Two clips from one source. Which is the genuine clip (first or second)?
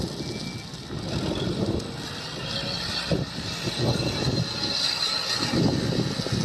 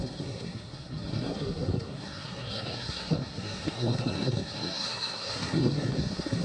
first